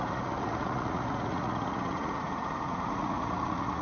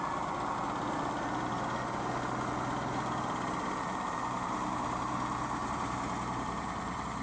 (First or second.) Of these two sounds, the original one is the second